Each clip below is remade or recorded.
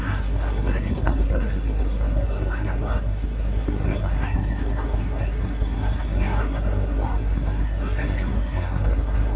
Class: remade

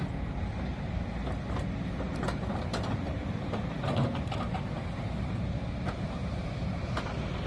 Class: remade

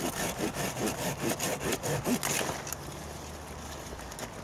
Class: recorded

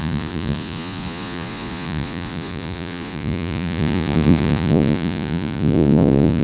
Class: remade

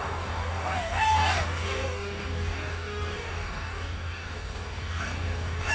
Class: remade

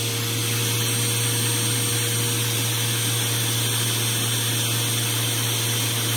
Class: recorded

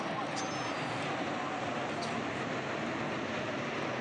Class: recorded